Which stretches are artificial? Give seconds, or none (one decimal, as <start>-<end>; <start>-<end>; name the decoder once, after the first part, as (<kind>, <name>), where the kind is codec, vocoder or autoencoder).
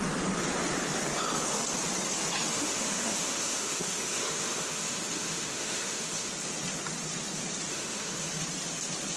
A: 2.5-6.3 (autoencoder, DAC-VAE); 7.7-8.3